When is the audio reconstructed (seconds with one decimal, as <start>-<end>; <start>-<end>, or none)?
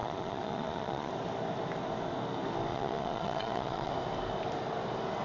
0.0-1.1; 2.7-3.9